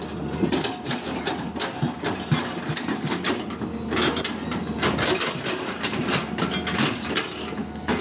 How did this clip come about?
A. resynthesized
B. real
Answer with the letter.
B